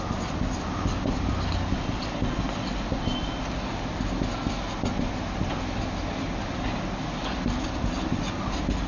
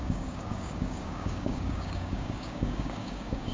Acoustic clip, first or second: first